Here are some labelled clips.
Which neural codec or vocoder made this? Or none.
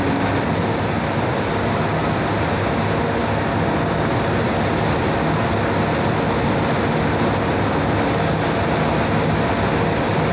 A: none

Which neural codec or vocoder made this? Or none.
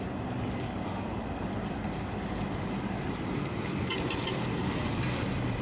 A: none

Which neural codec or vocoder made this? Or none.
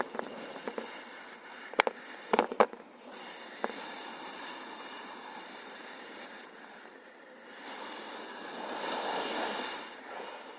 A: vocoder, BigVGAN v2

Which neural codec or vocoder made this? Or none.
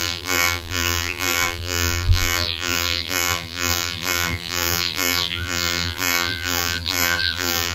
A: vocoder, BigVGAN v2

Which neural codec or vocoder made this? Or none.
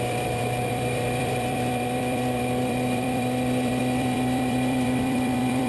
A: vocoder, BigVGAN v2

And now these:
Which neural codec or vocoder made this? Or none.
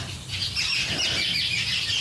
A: none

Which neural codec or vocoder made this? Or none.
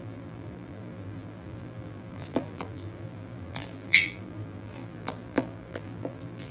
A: vocoder, BigVGAN v2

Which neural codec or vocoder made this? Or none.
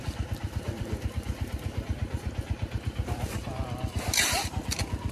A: vocoder, BigVGAN v2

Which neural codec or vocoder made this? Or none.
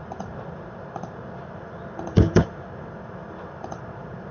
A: vocoder, BigVGAN v2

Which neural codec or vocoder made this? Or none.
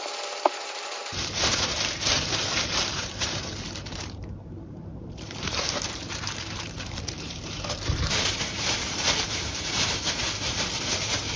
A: vocoder, BigVGAN v2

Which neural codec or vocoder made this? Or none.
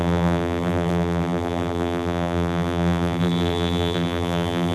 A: vocoder, BigVGAN v2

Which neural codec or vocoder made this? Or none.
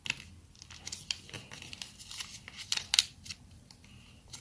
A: vocoder, BigVGAN v2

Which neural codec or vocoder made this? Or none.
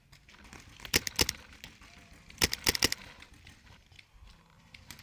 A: none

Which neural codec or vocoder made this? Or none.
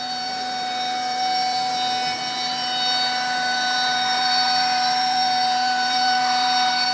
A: vocoder, BigVGAN v2